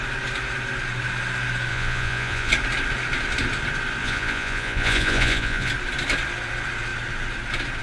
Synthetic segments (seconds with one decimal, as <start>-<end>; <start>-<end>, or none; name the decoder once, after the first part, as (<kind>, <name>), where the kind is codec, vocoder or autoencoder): 1.7-2.5 (vocoder, Vocos); 4.0-5.7